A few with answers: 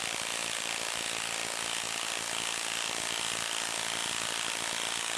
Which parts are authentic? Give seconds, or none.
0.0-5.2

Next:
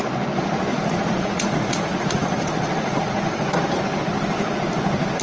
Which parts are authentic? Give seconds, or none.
0.0-0.7; 3.8-5.2